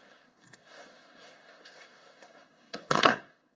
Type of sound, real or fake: fake